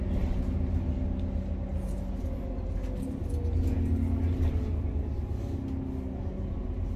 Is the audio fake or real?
real